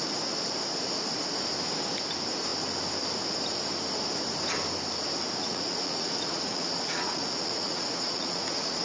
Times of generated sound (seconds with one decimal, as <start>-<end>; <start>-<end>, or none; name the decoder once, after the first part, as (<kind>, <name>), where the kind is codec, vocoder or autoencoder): 5.4-8.8 (vocoder, Vocos)